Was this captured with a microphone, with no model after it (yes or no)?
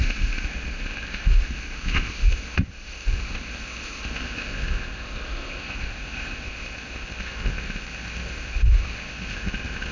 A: no